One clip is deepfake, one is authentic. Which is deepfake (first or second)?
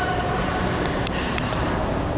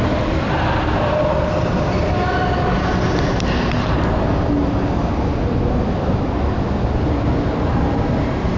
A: first